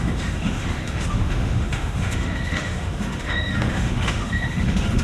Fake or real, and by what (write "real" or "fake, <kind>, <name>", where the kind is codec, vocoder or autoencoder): fake, autoencoder, DAC-VAE